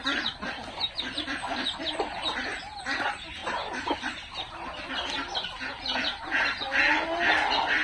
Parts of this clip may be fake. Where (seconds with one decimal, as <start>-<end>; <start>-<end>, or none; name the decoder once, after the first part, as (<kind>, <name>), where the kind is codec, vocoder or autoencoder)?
none